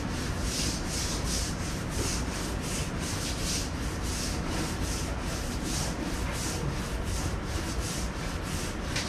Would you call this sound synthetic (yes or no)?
no